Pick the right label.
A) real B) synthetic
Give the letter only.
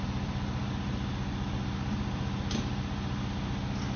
A